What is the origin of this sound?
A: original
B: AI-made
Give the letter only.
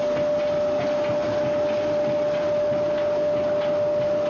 A